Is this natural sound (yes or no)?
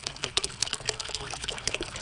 no